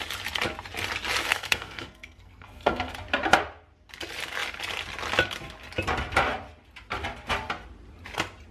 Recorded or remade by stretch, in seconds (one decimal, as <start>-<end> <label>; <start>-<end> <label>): 0.0-1.2 recorded; 1.2-2.9 remade; 2.9-8.5 recorded